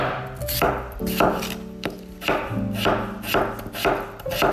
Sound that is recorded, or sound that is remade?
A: recorded